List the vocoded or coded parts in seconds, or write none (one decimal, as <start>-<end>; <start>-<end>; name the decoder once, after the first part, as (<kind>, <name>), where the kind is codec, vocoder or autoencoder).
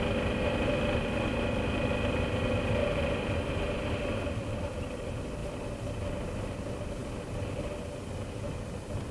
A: 2.8-3.6 (vocoder, BigVGAN v2)